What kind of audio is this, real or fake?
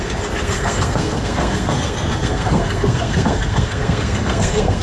fake